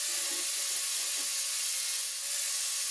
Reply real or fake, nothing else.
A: fake